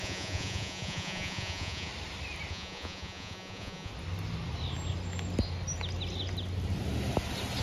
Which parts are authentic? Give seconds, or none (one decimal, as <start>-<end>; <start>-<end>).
1.9-2.5; 3.9-7.6